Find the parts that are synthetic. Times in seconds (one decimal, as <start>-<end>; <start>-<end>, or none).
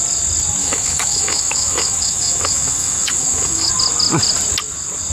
0.6-3.7